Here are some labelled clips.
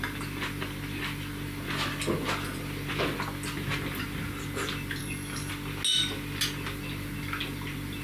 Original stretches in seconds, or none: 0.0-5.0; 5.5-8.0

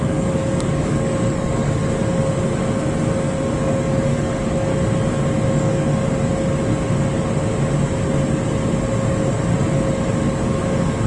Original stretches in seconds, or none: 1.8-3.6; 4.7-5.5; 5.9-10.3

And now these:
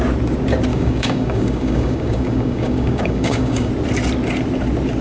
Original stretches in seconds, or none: 0.0-0.7; 3.7-5.0